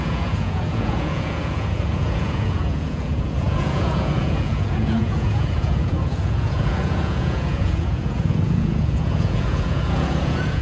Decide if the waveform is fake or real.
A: fake